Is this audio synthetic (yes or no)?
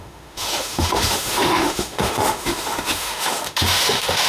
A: yes